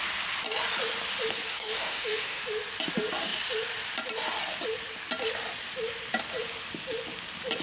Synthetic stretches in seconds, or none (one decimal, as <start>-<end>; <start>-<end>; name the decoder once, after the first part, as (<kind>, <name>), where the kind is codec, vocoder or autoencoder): 1.5-2.4 (autoencoder, DAC-VAE)